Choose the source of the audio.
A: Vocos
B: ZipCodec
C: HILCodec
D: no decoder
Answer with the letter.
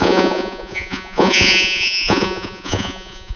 A